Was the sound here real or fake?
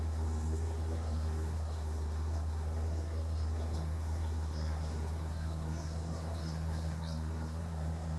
fake